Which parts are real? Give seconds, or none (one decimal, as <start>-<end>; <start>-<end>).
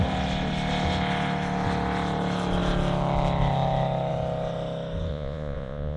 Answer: 0.0-5.1